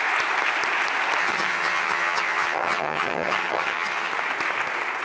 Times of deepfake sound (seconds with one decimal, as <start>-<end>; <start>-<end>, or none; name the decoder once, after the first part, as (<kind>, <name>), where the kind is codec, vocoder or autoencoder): 1.2-4.1 (vocoder, HiFi-GAN)